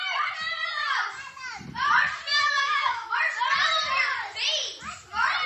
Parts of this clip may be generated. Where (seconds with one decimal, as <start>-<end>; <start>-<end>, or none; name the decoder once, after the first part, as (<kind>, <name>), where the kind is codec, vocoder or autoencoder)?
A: 2.3-3.1 (autoencoder, DAC-VAE)